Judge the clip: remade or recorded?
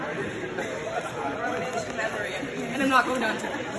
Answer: remade